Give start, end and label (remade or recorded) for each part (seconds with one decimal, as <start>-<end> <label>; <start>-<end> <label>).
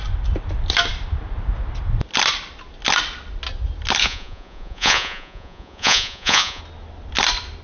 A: 0.0-4.0 recorded; 4.0-6.6 remade; 6.6-7.6 recorded